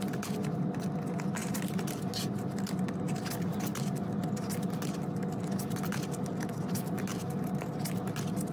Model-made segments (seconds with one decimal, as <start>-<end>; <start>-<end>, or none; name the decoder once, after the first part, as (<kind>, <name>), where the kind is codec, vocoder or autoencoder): none